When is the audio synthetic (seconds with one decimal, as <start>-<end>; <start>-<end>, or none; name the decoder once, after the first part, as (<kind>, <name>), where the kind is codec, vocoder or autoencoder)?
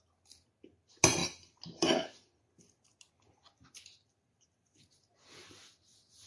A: none